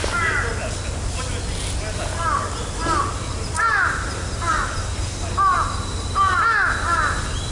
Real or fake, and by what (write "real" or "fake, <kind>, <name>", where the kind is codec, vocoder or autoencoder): real